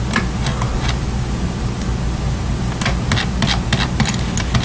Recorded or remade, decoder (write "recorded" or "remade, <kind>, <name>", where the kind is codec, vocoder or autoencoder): recorded